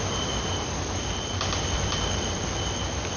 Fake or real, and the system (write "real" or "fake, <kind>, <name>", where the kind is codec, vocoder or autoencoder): real